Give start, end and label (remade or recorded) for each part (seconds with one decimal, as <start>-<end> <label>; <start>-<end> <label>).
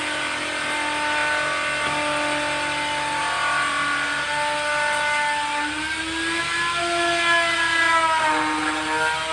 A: 0.0-9.3 recorded